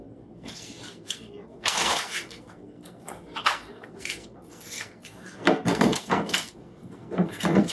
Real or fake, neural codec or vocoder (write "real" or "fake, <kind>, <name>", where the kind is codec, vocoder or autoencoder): fake, codec, SNAC